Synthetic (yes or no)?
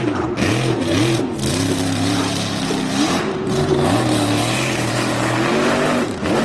yes